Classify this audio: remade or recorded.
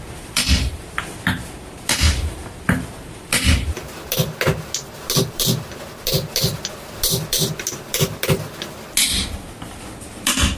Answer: recorded